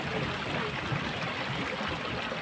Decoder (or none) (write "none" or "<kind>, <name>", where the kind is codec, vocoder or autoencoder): none